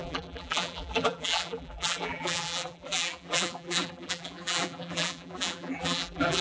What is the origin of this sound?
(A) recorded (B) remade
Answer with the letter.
B